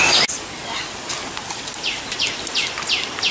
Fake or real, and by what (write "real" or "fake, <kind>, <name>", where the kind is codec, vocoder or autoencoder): real